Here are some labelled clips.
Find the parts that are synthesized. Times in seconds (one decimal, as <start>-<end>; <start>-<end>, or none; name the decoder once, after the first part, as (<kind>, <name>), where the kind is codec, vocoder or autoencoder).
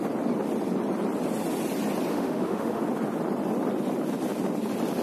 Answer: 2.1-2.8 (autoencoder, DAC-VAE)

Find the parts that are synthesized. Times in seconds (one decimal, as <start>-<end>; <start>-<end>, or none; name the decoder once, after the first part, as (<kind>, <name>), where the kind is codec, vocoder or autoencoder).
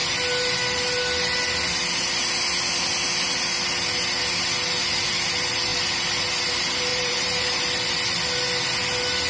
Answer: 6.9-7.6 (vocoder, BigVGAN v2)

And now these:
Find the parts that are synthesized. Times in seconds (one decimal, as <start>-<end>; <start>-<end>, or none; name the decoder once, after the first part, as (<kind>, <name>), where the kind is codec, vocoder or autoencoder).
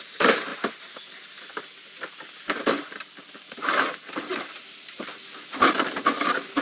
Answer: 0.0-6.6 (vocoder, BigVGAN v2)